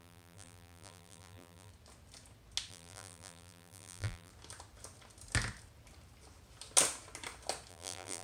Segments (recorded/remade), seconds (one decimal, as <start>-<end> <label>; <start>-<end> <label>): 0.0-1.7 remade; 1.7-2.7 recorded; 2.7-4.3 remade; 4.3-7.7 recorded; 7.7-8.2 remade